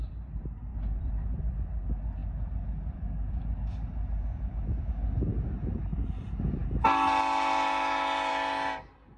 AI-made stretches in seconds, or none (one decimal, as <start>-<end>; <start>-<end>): 0.7-1.5; 2.2-4.9